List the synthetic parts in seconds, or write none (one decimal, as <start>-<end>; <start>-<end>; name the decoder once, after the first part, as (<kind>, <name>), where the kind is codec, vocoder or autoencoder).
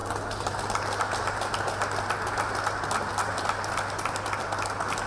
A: none